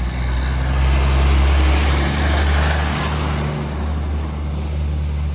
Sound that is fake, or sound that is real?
real